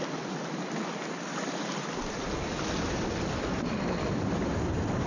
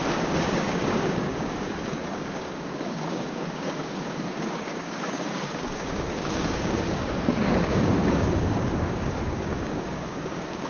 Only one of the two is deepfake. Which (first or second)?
second